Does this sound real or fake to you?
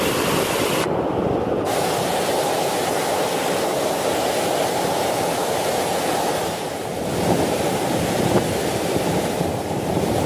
real